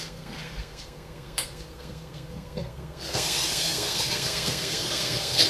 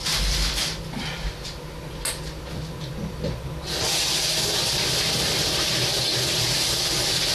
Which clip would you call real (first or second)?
second